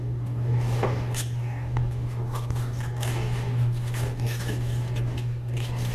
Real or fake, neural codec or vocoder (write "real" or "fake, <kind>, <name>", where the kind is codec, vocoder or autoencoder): fake, codec, DAC